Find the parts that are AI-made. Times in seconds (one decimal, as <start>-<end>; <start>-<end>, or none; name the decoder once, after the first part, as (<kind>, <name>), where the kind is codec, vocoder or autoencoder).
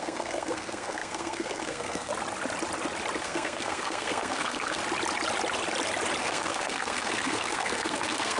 0.0-2.1 (codec, SNAC); 3.2-4.8; 6.2-8.4